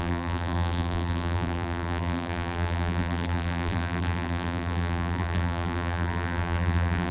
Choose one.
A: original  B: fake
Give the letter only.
B